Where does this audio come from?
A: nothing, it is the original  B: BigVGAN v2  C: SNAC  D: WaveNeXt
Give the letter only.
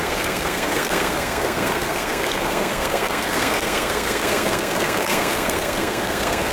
C